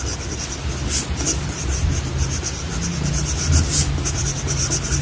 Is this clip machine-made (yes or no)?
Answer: no